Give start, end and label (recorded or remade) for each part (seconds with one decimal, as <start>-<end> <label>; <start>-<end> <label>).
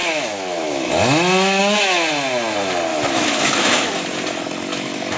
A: 0.0-0.9 remade; 0.9-1.6 recorded; 1.6-2.1 remade; 2.1-2.9 recorded; 2.9-3.9 remade; 3.9-4.7 recorded; 4.7-5.2 remade